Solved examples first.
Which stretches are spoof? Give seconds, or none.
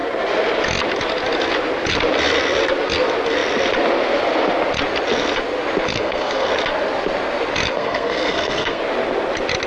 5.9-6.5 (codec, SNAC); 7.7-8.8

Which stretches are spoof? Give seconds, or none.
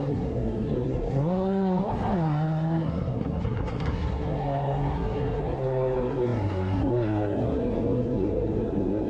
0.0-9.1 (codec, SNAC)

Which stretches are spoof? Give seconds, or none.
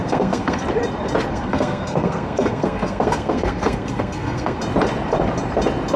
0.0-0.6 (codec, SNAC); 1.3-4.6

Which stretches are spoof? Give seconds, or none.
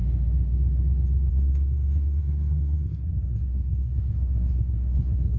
1.3-5.4 (codec, SNAC)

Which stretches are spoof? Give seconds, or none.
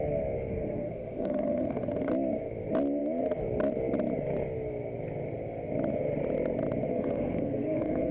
0.5-2.1 (codec, SNAC); 6.9-8.1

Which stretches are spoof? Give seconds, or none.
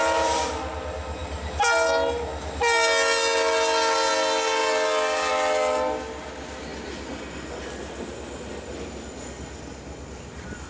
none